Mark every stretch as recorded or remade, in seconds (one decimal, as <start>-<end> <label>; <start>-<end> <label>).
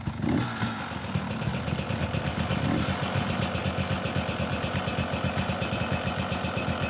0.0-6.9 recorded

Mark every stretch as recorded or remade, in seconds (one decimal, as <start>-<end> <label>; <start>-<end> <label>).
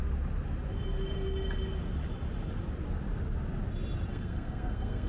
0.0-4.1 recorded; 4.1-5.1 remade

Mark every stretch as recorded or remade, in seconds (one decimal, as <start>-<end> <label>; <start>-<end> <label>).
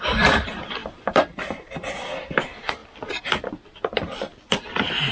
0.0-2.8 remade; 2.8-5.1 recorded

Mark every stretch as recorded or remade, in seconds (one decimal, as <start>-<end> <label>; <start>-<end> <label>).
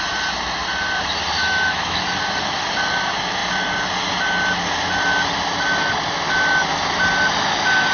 0.0-1.4 recorded; 1.4-2.0 remade; 2.0-7.9 recorded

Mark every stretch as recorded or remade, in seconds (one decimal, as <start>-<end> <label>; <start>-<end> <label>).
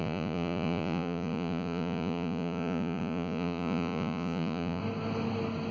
0.0-4.8 remade; 4.8-5.7 recorded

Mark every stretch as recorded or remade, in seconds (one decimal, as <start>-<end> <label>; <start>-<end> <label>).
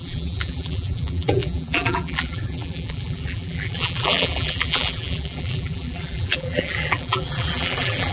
0.0-8.1 remade